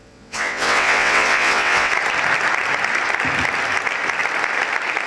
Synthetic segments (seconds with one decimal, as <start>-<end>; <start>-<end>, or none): 0.0-1.9